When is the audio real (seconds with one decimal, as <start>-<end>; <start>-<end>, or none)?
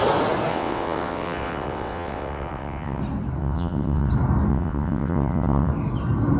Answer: 0.0-0.5; 3.0-3.4; 4.1-4.5; 5.7-6.4